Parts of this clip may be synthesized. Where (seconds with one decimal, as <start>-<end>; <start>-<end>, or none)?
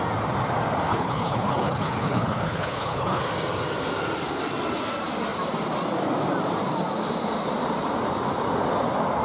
0.9-3.2